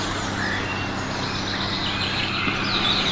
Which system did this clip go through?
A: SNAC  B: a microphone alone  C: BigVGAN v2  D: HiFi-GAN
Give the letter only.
B